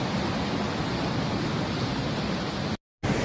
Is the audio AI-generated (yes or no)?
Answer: no